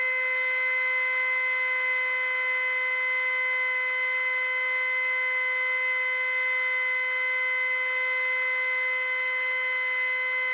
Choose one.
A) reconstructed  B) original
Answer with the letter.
B